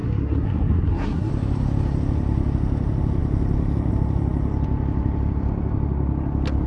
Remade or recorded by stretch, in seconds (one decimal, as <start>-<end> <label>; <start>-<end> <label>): 0.0-1.3 remade; 1.3-6.7 recorded